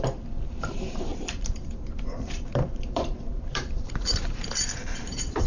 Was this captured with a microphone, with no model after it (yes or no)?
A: no